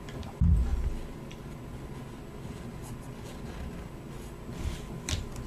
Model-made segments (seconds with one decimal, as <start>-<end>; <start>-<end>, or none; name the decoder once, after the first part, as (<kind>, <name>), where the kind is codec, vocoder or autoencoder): none